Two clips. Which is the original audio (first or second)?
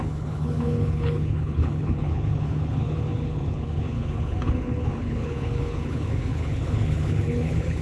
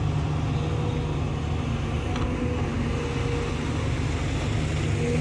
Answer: second